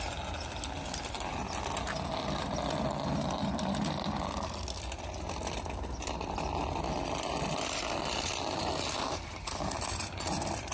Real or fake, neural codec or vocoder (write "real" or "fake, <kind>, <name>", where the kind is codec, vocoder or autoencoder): real